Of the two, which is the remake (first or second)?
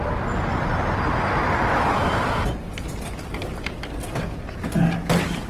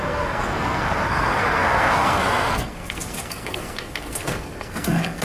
second